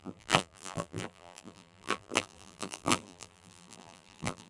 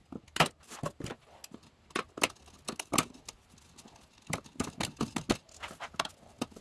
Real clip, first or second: second